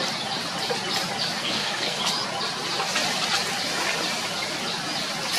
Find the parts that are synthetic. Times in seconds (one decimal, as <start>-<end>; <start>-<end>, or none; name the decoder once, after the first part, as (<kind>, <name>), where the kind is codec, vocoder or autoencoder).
1.4-2.0 (codec, SNAC)